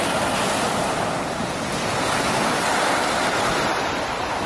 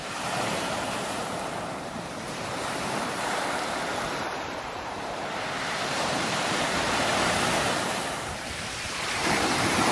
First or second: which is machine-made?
second